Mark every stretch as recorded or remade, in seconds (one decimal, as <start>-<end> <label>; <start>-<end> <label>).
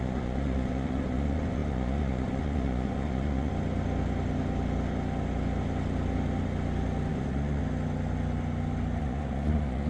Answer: 0.0-3.5 remade; 3.5-7.1 recorded; 7.1-7.6 remade; 7.6-9.0 recorded; 9.0-9.9 remade